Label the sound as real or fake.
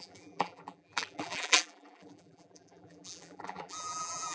fake